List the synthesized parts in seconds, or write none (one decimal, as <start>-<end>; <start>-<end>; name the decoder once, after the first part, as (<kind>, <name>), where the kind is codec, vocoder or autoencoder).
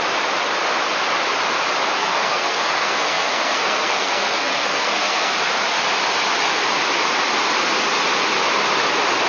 2.0-5.3 (codec, SNAC)